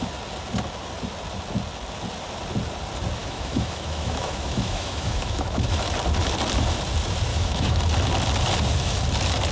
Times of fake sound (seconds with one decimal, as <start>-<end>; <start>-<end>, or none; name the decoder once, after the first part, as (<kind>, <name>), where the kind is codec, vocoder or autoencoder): 3.2-5.9 (autoencoder, DAC-VAE); 7.3-7.8